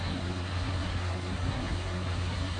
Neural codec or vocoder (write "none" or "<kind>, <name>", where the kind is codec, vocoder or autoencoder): codec, SNAC